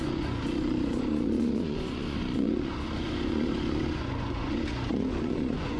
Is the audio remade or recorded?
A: remade